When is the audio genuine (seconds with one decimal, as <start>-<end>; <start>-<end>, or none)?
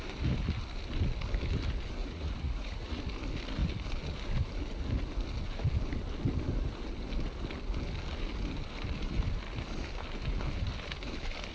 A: 0.0-2.0; 3.0-11.5